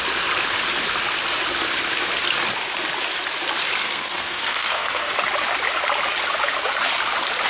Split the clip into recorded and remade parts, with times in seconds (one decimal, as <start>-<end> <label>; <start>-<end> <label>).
0.0-3.8 recorded; 3.8-5.1 remade; 5.1-7.5 recorded